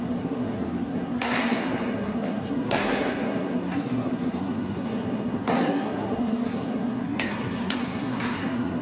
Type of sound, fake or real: fake